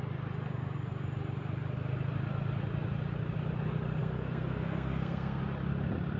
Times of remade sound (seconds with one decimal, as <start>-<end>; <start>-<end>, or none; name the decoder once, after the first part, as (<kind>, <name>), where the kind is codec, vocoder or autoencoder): 4.0-5.4 (codec, SNAC)